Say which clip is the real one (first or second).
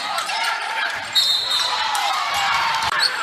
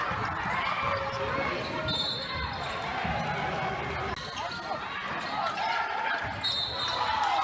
second